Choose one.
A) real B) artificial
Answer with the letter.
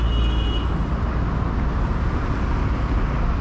A